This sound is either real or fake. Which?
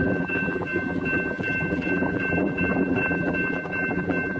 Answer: fake